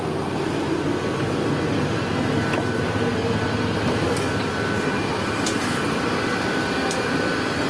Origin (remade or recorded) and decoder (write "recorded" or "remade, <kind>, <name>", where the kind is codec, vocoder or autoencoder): recorded